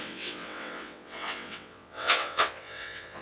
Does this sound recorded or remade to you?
remade